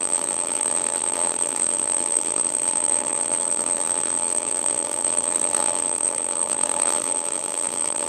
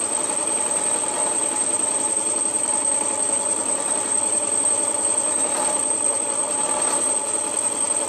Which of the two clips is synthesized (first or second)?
first